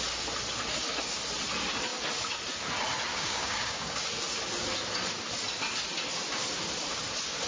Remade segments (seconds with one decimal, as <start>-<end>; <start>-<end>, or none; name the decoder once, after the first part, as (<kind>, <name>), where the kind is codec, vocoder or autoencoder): 3.1-4.0 (codec, DAC)